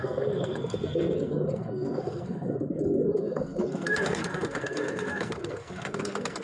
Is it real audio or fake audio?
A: fake